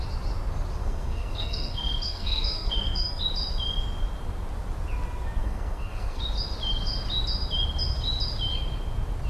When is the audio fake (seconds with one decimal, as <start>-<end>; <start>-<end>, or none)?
0.8-3.2; 5.4-6.2